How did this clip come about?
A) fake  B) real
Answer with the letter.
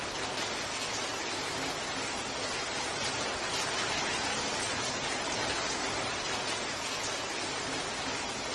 B